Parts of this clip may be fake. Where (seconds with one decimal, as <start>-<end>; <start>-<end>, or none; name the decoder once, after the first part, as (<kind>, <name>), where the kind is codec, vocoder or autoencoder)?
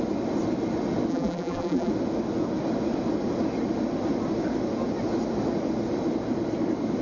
1.1-1.9 (vocoder, BigVGAN v2)